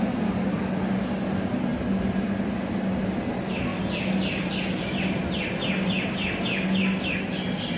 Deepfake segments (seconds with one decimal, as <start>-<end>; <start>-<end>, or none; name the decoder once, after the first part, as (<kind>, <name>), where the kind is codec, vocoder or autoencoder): none